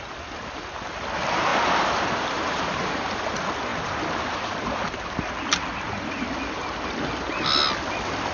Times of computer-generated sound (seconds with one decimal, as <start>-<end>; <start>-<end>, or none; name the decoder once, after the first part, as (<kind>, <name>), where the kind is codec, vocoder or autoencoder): 1.5-3.1 (vocoder, BigVGAN v2); 3.7-5.3